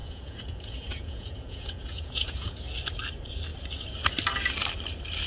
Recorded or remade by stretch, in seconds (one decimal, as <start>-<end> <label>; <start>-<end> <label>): 0.0-2.6 remade; 2.6-5.3 recorded